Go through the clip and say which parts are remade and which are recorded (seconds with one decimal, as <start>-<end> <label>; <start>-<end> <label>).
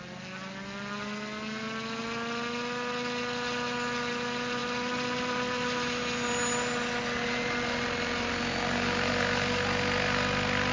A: 0.0-10.7 recorded